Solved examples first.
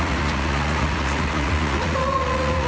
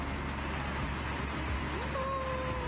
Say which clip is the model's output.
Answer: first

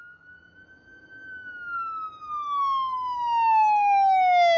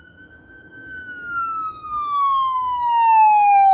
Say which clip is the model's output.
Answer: second